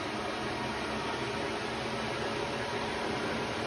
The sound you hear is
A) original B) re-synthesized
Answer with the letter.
A